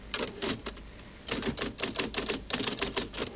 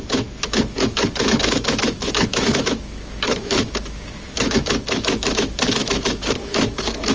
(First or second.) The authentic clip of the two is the first